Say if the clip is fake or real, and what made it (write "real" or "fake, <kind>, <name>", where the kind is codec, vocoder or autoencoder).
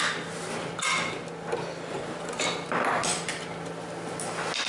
real